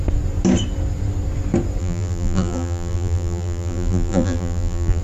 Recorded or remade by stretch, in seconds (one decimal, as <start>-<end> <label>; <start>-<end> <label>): 0.0-1.8 recorded; 1.8-5.0 remade